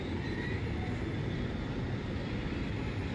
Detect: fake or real real